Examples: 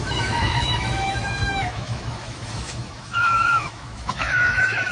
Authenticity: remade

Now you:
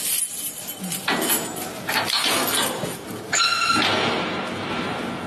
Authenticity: recorded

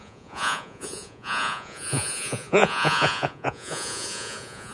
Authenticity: remade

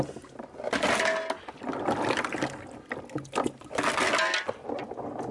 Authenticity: recorded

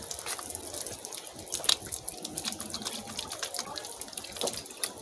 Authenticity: recorded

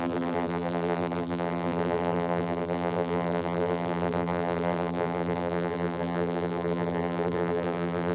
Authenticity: remade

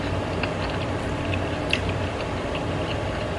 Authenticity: recorded